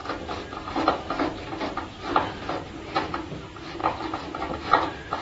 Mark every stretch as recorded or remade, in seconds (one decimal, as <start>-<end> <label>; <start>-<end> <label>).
0.0-3.1 recorded; 3.1-3.8 remade; 3.8-4.5 recorded; 4.5-5.2 remade